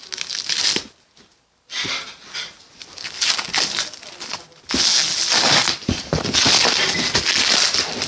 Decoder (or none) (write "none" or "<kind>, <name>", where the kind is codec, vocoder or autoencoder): none